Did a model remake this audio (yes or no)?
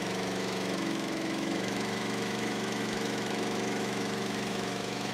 yes